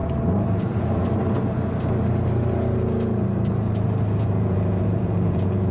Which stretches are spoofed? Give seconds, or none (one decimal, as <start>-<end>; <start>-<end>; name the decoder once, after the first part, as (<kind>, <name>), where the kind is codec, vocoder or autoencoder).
0.6-1.0 (vocoder, Vocos); 4.2-5.7